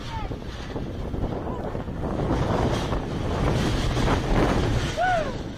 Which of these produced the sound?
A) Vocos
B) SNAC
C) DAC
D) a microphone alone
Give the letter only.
D